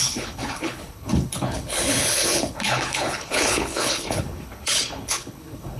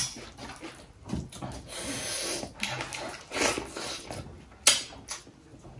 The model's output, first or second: first